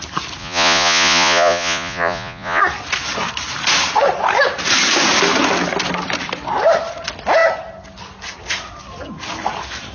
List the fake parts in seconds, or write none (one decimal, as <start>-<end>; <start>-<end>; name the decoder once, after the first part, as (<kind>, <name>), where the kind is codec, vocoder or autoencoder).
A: 0.4-2.6 (vocoder, Vocos)